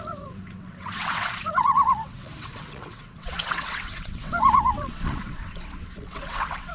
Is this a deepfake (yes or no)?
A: yes